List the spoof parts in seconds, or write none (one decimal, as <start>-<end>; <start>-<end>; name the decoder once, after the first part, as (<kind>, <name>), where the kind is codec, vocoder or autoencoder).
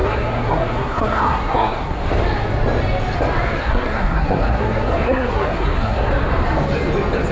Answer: 0.0-2.0 (codec, SNAC); 3.6-6.1